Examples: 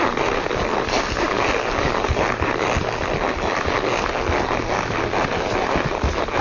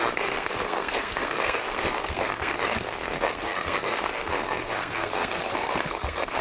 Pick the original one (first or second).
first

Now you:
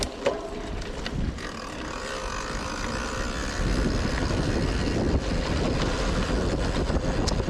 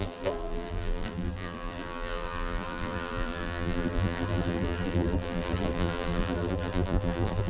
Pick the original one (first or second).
first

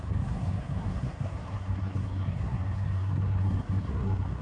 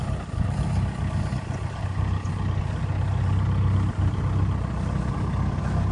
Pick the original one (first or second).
second